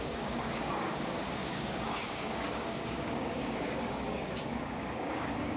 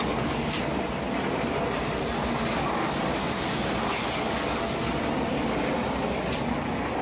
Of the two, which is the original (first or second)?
second